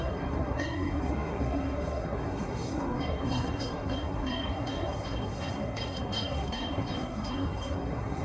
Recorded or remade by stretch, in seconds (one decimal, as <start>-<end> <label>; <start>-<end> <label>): 0.0-8.2 remade